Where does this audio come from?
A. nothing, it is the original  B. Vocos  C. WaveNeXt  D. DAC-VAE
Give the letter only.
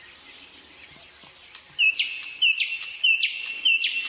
A